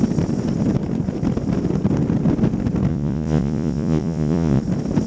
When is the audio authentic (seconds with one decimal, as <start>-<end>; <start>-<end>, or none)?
0.0-2.9; 4.6-5.1